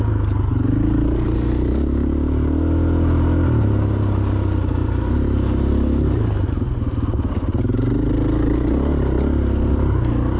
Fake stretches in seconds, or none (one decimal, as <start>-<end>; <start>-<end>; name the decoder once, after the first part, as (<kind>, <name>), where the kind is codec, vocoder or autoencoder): 4.8-5.7 (vocoder, BigVGAN v2)